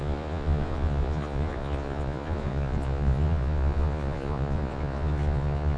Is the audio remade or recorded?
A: remade